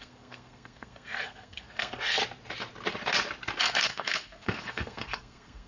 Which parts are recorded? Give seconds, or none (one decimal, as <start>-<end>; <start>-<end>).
2.2-3.6